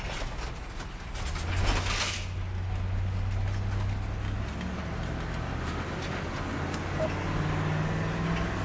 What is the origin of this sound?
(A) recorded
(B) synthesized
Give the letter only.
A